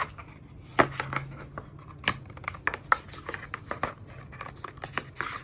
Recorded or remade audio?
recorded